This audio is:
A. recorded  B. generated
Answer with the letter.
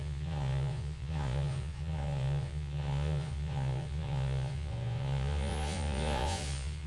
B